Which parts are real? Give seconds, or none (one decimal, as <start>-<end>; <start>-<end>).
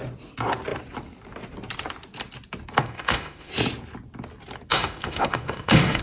0.0-2.8; 3.5-4.7